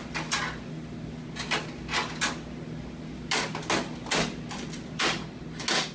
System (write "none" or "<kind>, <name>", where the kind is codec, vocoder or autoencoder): none